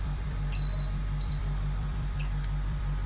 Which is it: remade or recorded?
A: remade